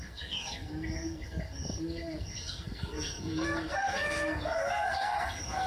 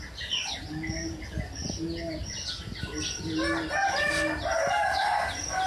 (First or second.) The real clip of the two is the second